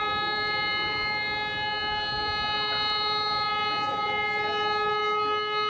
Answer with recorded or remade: recorded